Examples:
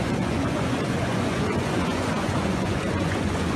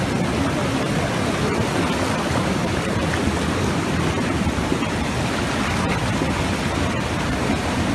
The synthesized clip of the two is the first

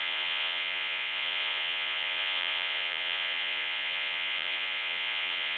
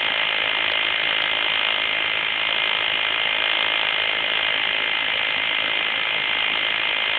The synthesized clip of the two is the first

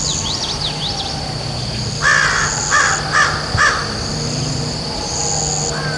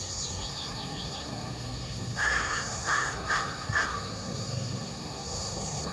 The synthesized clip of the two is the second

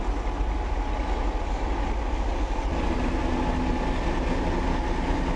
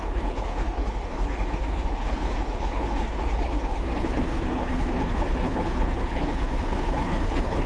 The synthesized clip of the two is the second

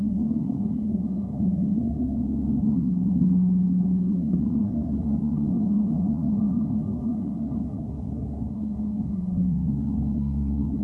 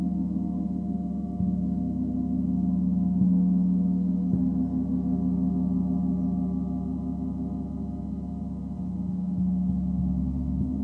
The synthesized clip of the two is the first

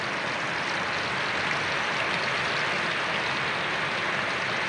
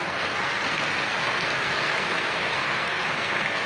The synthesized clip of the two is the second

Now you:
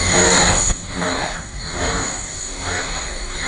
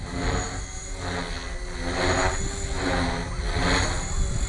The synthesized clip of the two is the first